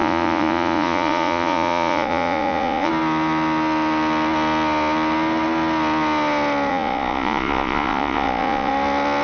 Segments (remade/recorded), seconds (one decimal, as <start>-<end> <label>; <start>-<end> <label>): 0.0-2.9 remade; 2.9-6.7 recorded; 6.7-8.7 remade; 8.7-9.2 recorded